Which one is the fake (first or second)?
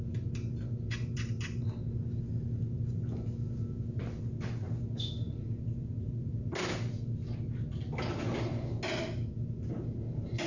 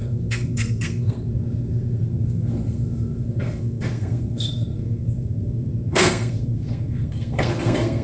second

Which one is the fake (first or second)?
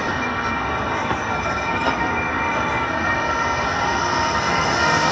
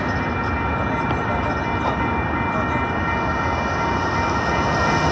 first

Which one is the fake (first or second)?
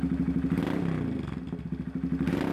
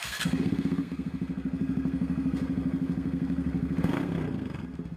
second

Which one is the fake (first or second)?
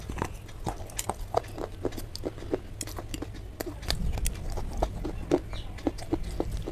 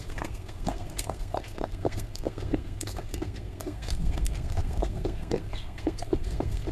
second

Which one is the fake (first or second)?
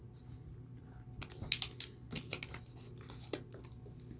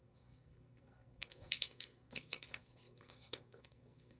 second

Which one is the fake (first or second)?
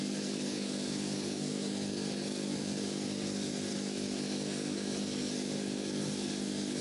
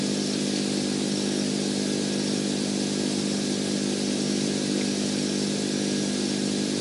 first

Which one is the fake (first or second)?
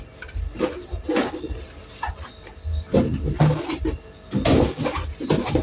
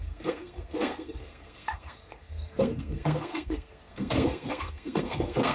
second